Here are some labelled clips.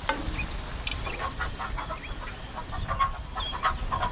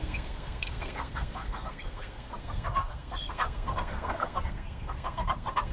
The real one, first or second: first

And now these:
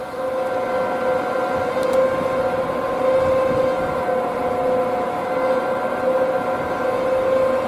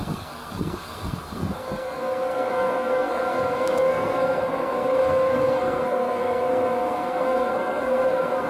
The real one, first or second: first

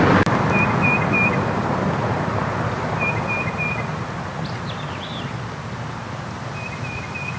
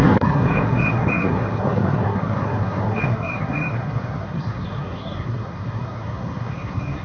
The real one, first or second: first